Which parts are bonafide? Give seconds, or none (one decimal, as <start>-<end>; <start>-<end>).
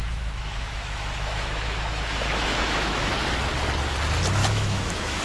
3.1-4.4